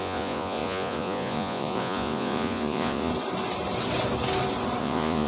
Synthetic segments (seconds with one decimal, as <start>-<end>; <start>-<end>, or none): 0.0-3.1; 4.8-5.3